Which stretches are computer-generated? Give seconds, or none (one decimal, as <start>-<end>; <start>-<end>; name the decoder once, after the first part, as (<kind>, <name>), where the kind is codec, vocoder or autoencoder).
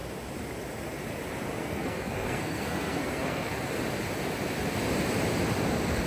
1.6-3.8 (codec, SNAC)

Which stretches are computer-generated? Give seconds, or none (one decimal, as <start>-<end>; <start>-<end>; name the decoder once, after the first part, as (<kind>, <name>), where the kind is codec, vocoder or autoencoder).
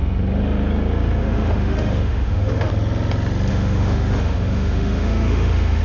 1.2-2.7 (autoencoder, DAC-VAE); 3.5-5.8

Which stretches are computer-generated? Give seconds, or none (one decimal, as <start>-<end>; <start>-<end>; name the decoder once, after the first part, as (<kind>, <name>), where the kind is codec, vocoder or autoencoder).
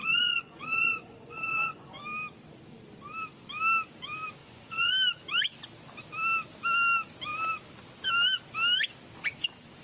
0.0-2.0 (vocoder, Vocos); 4.4-4.9